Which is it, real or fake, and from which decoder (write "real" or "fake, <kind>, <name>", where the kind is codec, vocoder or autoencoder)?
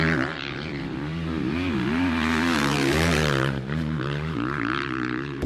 fake, vocoder, BigVGAN v2